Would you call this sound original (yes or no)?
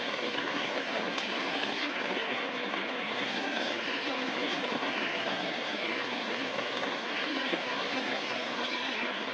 no